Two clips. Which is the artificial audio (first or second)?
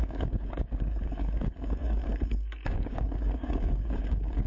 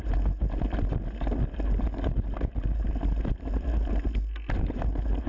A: first